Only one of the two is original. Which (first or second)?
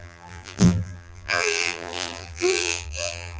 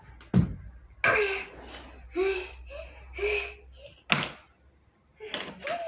second